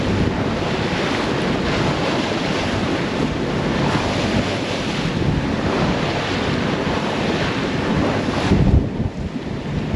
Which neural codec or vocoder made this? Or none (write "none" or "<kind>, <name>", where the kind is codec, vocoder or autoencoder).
vocoder, BigVGAN v2